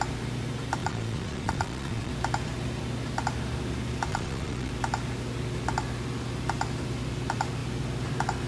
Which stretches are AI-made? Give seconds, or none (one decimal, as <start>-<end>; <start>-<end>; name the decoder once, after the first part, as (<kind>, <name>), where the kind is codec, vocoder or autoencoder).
0.8-2.1 (vocoder, Vocos); 4.1-4.7